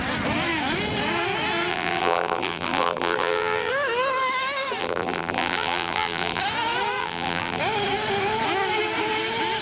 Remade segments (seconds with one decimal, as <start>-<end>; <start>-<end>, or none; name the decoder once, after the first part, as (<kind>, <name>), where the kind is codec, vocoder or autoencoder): 1.7-3.7 (vocoder, BigVGAN v2); 4.8-6.4; 7.0-7.6